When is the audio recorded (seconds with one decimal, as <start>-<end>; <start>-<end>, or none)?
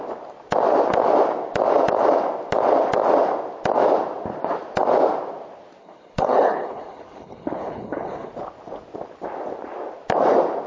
0.0-5.8; 8.3-10.7